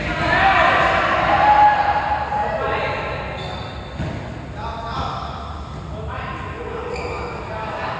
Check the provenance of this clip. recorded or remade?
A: recorded